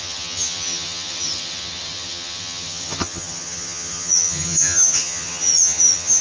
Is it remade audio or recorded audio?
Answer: remade